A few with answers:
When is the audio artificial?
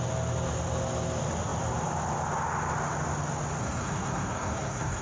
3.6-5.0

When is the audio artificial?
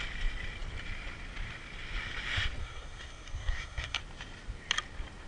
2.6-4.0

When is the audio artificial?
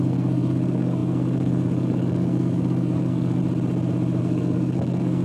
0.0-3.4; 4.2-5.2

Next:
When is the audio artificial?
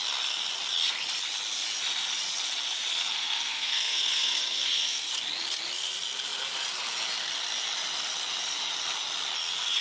3.0-5.1